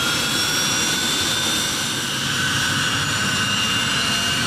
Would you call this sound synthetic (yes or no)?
no